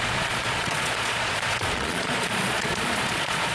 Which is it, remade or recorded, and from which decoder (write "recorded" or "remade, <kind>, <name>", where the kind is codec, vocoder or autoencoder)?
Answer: remade, vocoder, Vocos